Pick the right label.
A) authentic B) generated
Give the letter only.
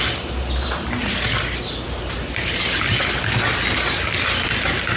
A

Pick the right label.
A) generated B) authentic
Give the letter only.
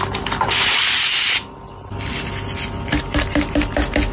B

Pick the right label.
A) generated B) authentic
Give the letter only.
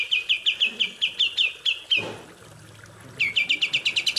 B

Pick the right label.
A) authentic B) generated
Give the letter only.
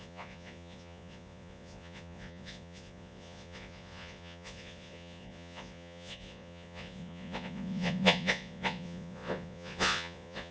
B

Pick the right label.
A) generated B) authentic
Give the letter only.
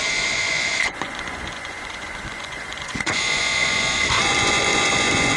A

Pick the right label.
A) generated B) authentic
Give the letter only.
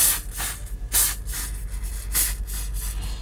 B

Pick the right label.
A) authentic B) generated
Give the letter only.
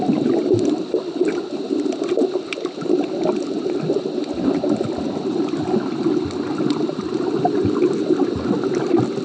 A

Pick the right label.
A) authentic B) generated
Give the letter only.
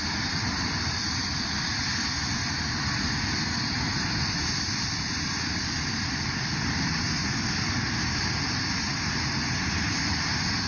A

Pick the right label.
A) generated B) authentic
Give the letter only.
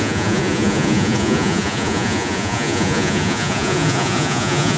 A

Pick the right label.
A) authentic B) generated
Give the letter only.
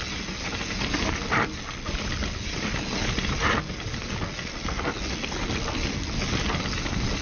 A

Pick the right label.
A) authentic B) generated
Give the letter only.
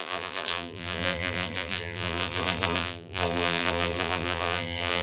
B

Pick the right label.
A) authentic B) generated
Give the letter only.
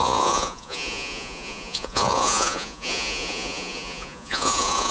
B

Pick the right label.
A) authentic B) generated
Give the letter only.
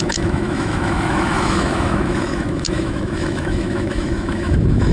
B